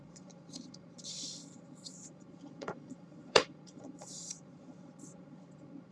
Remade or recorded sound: remade